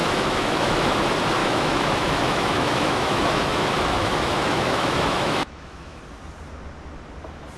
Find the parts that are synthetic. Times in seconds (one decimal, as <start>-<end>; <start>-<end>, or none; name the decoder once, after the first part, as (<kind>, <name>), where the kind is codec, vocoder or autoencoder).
0.0-1.0 (autoencoder, DAC-VAE); 1.4-6.0